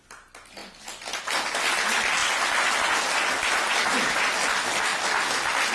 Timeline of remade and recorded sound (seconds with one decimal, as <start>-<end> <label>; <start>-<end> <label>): 0.0-4.9 recorded; 4.9-5.7 remade